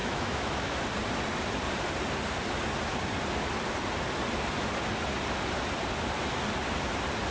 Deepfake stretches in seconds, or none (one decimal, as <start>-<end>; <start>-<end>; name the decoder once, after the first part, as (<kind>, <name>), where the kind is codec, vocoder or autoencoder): 0.0-0.8 (autoencoder, DAC-VAE)